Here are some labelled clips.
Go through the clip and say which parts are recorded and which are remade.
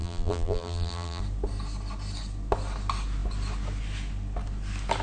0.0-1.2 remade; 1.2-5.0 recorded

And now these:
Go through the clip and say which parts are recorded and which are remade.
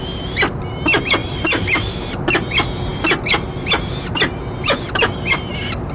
0.0-1.2 recorded; 1.2-1.9 remade; 1.9-5.9 recorded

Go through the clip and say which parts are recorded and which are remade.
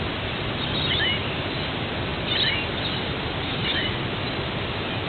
0.0-5.1 recorded